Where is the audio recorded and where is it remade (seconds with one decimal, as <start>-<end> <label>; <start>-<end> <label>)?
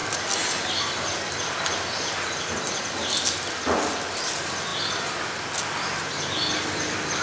0.0-7.2 recorded